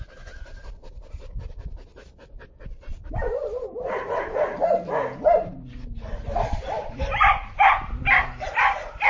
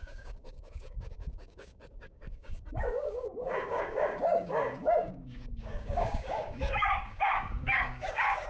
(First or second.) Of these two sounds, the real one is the first